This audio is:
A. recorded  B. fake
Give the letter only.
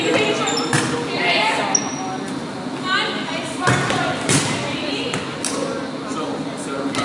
A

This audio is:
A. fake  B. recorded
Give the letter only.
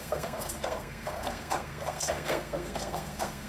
A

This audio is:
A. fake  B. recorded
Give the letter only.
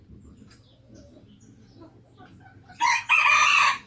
B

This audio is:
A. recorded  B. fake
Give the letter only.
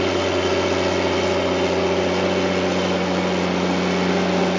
A